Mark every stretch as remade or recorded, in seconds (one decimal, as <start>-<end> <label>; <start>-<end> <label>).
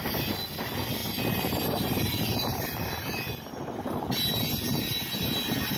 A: 0.0-1.0 recorded; 1.0-4.5 remade; 4.5-5.8 recorded